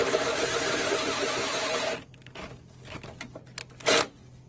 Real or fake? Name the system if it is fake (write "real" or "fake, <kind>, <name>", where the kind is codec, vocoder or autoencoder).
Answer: real